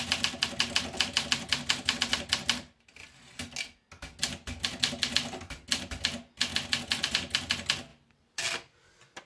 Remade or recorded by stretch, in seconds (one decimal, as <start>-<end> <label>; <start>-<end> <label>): 0.0-9.3 recorded